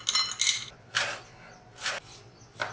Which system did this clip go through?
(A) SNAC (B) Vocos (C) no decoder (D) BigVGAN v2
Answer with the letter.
C